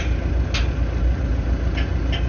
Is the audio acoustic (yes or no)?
yes